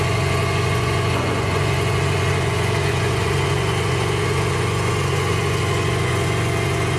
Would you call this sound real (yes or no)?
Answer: no